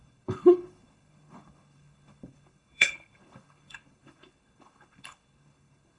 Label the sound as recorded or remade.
remade